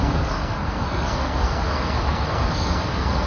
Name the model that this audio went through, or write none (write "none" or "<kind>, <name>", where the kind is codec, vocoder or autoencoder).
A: codec, SNAC